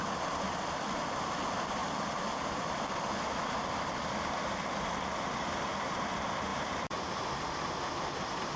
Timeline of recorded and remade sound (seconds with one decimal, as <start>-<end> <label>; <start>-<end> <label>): 0.0-1.8 recorded; 1.8-4.8 remade; 4.8-6.5 recorded; 6.5-7.2 remade; 7.2-8.6 recorded